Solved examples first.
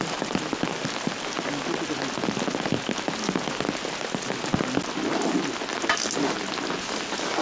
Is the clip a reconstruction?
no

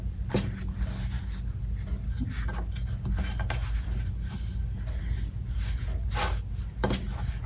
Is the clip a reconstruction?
no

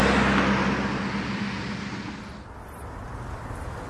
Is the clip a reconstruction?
no